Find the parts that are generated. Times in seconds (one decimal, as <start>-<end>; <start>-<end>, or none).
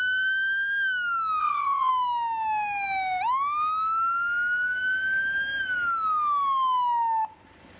1.4-1.9